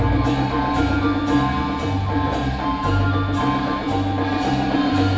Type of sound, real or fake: real